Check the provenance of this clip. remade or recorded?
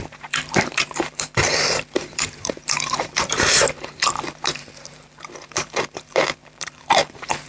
remade